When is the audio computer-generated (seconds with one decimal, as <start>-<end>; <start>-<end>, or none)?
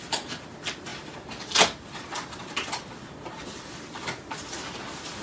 0.9-3.7